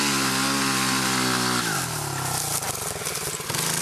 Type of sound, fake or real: real